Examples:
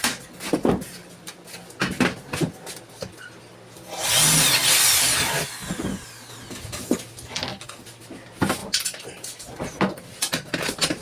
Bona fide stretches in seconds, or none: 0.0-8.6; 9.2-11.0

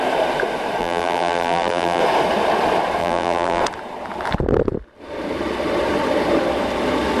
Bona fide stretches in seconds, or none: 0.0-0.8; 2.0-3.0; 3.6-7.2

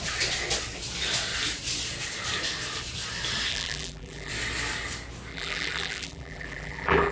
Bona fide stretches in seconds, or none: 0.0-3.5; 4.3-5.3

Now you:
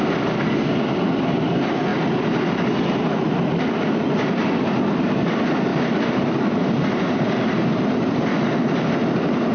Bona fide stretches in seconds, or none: 0.0-5.7; 7.0-9.5

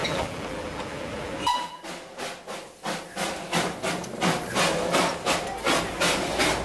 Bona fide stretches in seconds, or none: 1.8-6.6